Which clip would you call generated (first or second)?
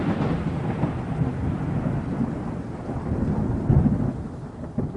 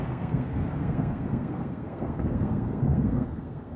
second